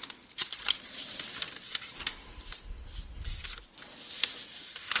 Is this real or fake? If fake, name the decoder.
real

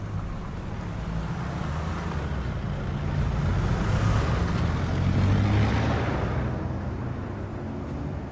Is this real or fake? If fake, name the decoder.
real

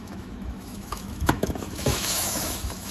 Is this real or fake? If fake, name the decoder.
fake, autoencoder, DAC-VAE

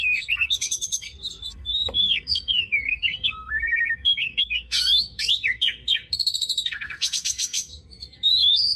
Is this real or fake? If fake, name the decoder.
fake, codec, SNAC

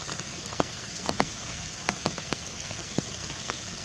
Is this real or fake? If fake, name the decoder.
fake, codec, SNAC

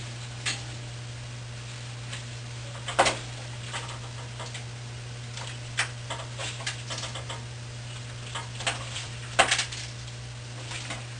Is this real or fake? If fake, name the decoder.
fake, vocoder, BigVGAN v2